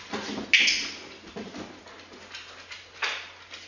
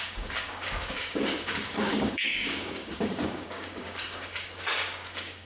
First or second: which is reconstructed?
second